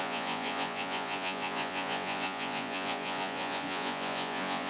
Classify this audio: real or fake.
fake